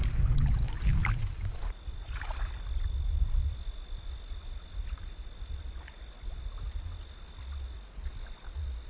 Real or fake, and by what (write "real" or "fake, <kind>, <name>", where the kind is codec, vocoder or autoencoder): fake, vocoder, BigVGAN v2